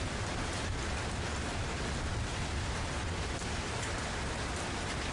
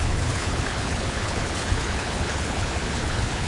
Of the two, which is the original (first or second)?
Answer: first